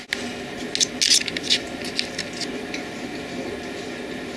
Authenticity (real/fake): real